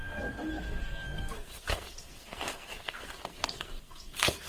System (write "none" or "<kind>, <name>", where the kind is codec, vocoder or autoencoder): codec, SNAC